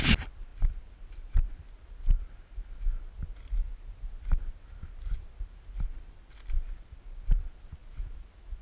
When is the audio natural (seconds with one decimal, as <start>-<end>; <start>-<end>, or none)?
0.0-8.6